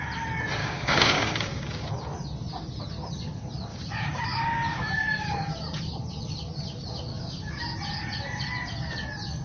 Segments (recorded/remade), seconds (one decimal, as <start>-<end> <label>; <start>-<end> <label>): 0.0-0.6 recorded; 0.6-1.9 remade; 1.9-3.7 recorded; 3.7-4.2 remade; 4.2-4.7 recorded; 4.7-5.5 remade; 5.5-7.1 recorded; 7.1-7.6 remade; 7.6-9.4 recorded

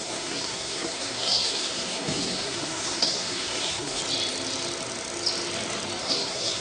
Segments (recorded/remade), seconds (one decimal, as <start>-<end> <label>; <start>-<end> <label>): 0.0-4.0 remade; 4.0-6.0 recorded; 6.0-6.6 remade

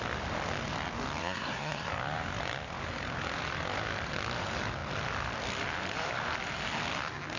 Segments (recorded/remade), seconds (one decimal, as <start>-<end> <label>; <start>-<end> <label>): 0.0-1.2 recorded; 1.2-1.9 remade; 1.9-7.4 recorded

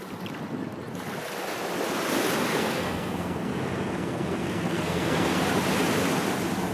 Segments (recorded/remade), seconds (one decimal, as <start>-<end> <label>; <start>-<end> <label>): 0.0-2.5 recorded; 2.5-5.4 remade; 5.4-6.7 recorded

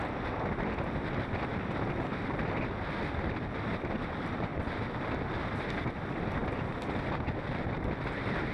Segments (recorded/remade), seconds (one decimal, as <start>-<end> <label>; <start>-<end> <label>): 0.0-4.5 recorded; 4.5-5.1 remade; 5.1-8.5 recorded

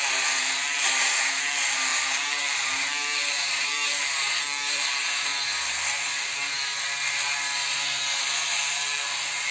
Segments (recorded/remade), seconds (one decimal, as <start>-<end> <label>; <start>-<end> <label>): 0.0-5.3 remade; 5.3-8.2 recorded; 8.2-9.5 remade

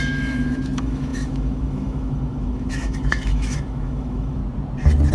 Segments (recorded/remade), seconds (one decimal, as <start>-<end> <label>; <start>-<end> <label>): 0.0-4.4 remade; 4.4-5.1 recorded

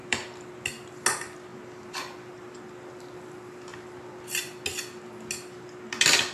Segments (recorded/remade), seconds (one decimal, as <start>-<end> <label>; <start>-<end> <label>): 0.0-0.5 remade; 0.5-1.5 recorded; 1.5-2.3 remade; 2.3-6.3 recorded